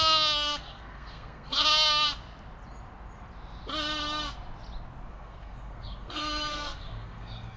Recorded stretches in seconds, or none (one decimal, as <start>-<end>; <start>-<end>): 1.6-5.1